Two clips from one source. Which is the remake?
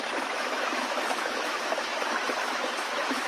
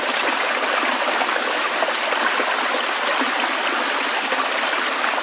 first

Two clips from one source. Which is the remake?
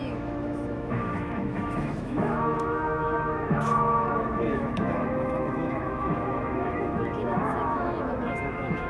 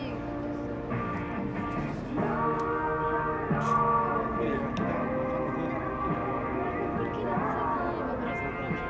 first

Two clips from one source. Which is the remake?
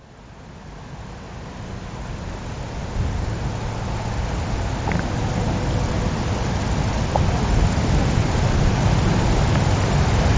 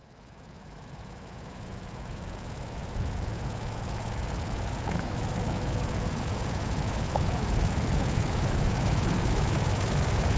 second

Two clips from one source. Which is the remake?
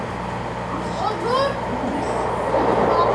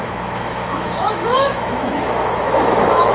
second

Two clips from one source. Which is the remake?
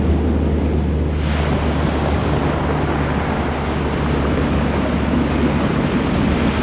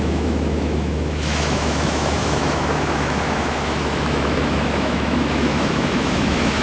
second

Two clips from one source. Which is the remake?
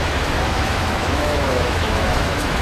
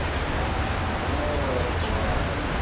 first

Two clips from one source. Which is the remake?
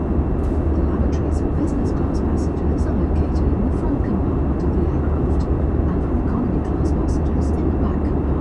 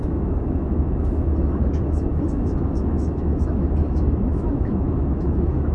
second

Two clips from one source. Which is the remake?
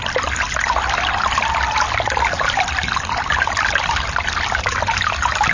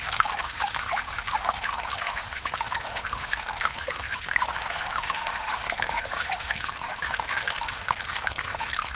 second